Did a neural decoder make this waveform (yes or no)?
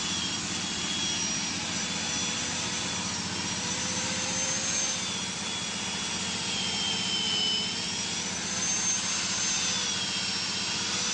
no